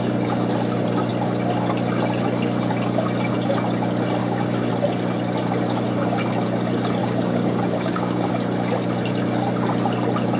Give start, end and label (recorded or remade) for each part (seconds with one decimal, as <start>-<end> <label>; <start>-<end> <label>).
0.0-4.2 recorded; 4.2-4.7 remade; 4.7-7.0 recorded; 7.0-8.3 remade; 8.3-10.4 recorded